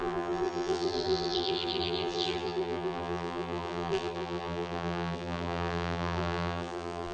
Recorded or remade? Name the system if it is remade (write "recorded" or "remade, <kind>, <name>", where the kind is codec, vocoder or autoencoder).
remade, vocoder, BigVGAN v2